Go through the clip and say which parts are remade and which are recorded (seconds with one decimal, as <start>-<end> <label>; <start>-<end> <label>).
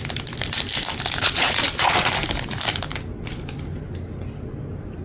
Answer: 0.0-1.2 recorded; 1.2-2.1 remade; 2.1-5.0 recorded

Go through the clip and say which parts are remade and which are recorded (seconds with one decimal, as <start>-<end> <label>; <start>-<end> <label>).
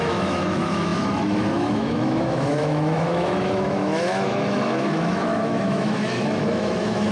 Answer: 0.0-7.1 remade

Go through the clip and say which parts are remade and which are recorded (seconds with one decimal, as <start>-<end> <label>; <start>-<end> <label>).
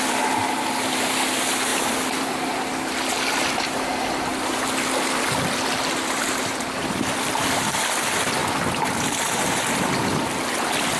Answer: 0.0-11.0 recorded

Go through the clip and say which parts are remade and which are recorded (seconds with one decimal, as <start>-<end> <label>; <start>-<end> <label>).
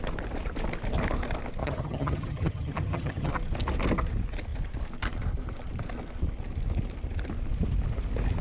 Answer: 0.0-1.6 recorded; 1.6-3.3 remade; 3.3-8.4 recorded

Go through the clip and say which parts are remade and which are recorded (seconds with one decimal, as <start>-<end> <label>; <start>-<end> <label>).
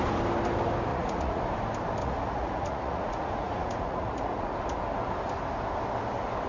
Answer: 0.0-0.9 recorded; 0.9-1.4 remade; 1.4-2.0 recorded; 2.0-4.5 remade; 4.5-6.5 recorded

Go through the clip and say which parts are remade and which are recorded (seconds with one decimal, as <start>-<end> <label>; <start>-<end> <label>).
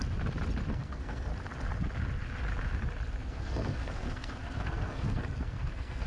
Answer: 0.0-0.7 recorded; 0.7-1.3 remade; 1.3-3.3 recorded; 3.3-6.1 remade